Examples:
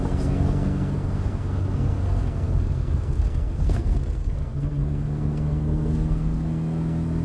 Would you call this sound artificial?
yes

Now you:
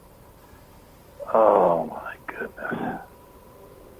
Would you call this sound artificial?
no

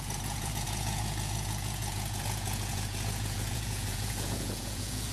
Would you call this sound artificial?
yes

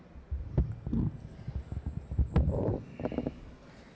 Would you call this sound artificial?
no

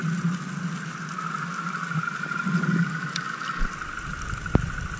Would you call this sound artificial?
no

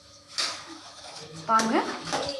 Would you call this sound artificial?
yes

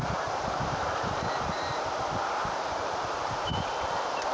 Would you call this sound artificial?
yes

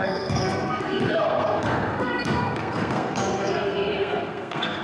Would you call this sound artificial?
yes